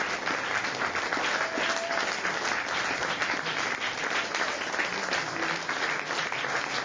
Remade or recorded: recorded